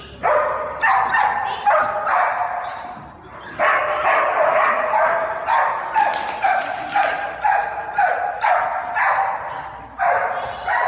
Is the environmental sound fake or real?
real